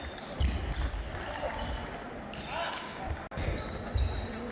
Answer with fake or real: real